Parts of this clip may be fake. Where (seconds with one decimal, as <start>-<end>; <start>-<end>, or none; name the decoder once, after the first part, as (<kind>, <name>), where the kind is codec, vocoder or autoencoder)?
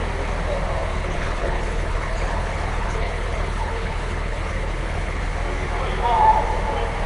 0.9-5.2 (codec, HILCodec)